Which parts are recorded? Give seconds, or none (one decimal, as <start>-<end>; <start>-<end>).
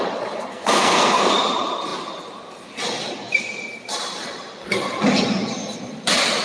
0.0-0.5; 1.3-6.4